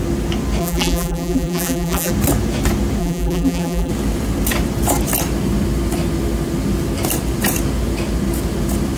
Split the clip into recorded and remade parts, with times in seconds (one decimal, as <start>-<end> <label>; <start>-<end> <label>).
0.0-0.6 recorded; 0.6-2.1 remade; 2.1-3.0 recorded; 3.0-3.9 remade; 3.9-9.0 recorded